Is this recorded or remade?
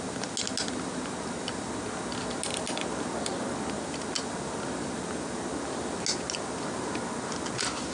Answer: recorded